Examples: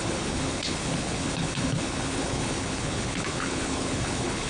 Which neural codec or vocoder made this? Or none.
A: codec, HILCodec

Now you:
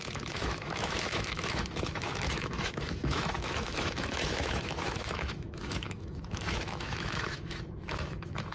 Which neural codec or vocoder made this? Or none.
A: autoencoder, DAC-VAE